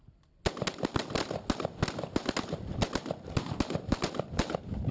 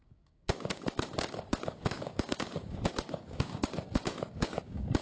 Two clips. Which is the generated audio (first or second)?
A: second